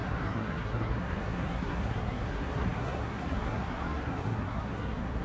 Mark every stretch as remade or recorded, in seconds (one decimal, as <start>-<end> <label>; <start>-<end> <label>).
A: 0.0-5.2 remade